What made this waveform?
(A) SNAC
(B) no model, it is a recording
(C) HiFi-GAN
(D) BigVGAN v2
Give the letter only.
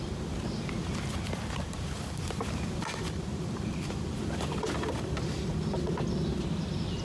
D